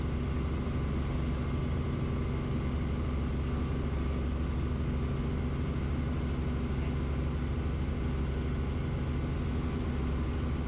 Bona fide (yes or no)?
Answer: yes